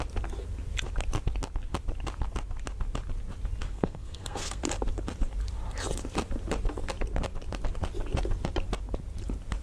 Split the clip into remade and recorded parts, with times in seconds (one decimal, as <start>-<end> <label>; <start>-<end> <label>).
0.0-3.6 recorded; 3.6-4.6 remade; 4.6-9.6 recorded